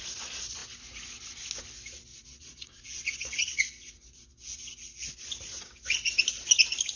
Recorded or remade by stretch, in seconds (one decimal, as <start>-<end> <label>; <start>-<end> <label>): 0.0-2.1 recorded; 2.1-5.1 remade; 5.1-7.0 recorded